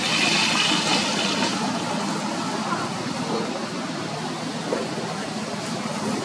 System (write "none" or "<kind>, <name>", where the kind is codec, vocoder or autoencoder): none